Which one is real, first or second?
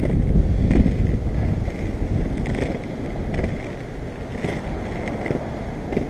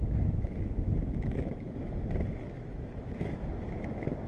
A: first